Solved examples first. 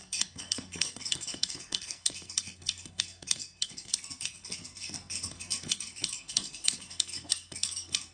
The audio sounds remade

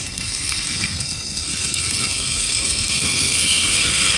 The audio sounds remade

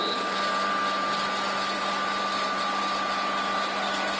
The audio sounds recorded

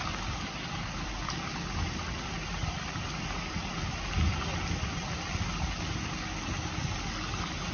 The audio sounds recorded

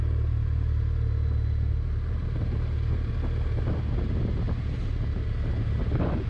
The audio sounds recorded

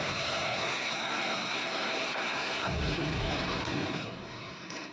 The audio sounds remade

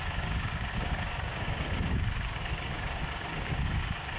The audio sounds remade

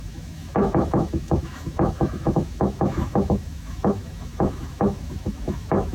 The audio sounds remade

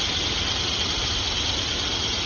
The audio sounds recorded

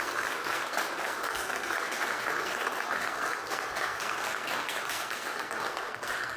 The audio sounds remade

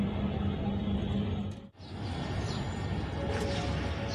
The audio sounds recorded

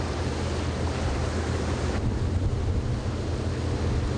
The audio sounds recorded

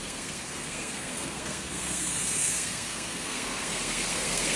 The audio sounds remade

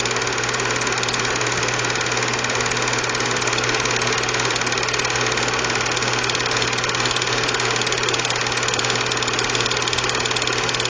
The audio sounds recorded